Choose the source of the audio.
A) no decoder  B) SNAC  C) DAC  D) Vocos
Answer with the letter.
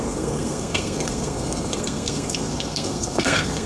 B